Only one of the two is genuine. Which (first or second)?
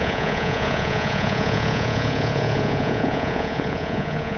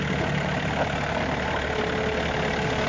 second